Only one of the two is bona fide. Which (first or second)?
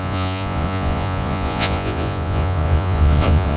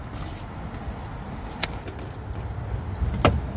second